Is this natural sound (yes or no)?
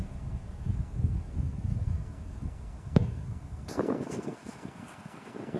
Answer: no